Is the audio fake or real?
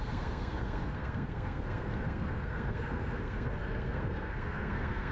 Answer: fake